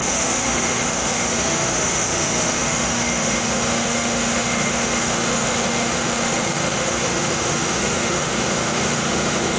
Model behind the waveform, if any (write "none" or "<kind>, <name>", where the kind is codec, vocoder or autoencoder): autoencoder, DAC-VAE